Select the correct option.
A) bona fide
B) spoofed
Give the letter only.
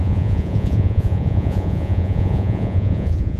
B